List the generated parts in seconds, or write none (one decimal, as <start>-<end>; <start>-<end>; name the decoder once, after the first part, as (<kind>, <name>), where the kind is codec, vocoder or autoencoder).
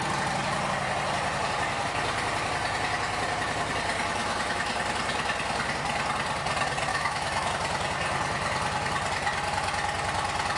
4.2-4.7 (autoencoder, DAC-VAE); 6.9-7.5